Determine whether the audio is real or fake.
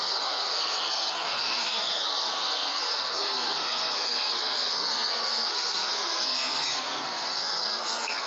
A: fake